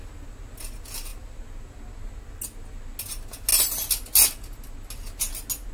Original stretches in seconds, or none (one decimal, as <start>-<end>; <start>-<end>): 0.0-5.7